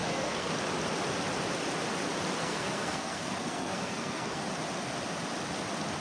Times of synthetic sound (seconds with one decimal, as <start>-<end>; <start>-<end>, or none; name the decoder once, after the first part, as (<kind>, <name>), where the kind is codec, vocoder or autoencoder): 0.0-0.5 (codec, SNAC); 2.4-4.4